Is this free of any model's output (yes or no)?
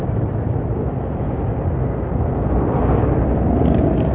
yes